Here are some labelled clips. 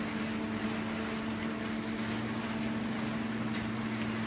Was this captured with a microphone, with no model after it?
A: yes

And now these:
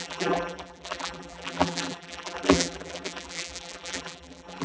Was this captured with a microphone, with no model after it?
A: no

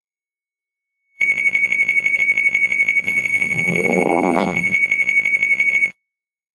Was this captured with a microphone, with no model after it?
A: no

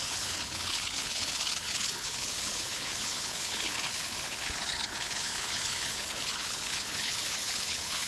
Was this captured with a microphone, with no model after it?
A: no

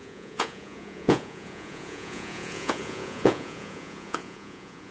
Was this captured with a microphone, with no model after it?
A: no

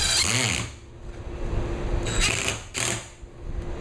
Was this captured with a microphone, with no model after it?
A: yes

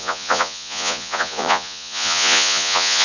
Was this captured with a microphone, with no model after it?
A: no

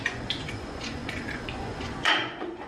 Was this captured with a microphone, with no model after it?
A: no